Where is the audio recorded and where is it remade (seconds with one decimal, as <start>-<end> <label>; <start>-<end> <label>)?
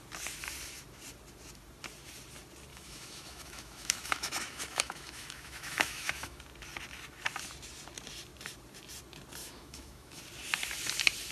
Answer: 0.0-2.7 recorded; 2.7-6.4 remade; 6.4-9.4 recorded; 9.4-10.2 remade; 10.2-11.3 recorded